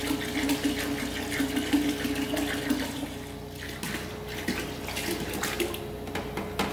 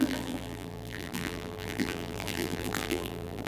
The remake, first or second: second